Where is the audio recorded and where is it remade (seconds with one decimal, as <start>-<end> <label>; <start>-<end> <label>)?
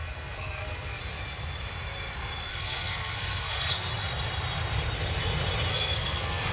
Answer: 0.0-1.0 remade; 1.0-2.5 recorded; 2.5-3.9 remade; 3.9-5.7 recorded; 5.7-6.5 remade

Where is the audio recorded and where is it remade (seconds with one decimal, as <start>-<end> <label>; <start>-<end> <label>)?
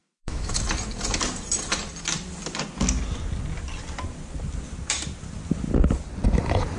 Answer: 0.0-0.5 remade; 0.5-6.8 recorded